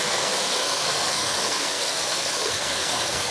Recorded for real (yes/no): no